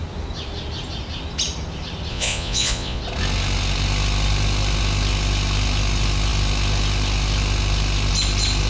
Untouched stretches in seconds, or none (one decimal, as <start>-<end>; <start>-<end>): 0.0-2.1; 3.0-8.7